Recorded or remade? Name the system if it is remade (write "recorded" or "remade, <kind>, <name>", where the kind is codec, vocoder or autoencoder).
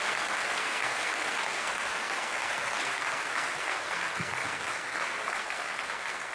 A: remade, codec, SNAC